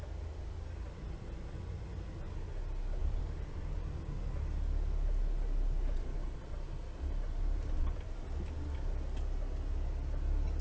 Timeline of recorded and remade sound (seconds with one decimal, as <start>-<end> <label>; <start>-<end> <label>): 0.0-3.0 recorded; 3.0-3.6 remade; 3.6-10.6 recorded